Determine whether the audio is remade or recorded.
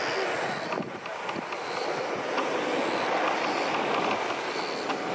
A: recorded